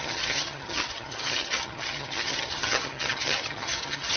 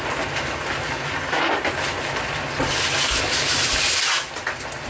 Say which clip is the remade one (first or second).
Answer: first